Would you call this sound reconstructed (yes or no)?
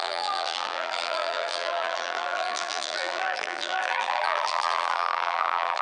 yes